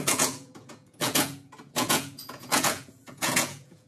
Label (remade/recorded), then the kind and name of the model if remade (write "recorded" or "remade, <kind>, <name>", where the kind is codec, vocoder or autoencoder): remade, vocoder, Vocos